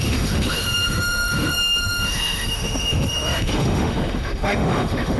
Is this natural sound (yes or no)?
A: no